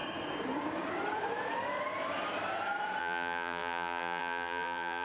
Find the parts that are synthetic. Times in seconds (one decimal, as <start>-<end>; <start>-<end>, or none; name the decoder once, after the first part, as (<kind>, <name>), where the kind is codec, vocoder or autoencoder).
3.0-5.0 (vocoder, BigVGAN v2)